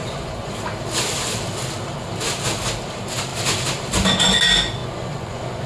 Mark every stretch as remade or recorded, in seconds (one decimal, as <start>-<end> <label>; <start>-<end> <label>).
0.0-0.5 remade; 0.5-4.8 recorded; 4.8-5.7 remade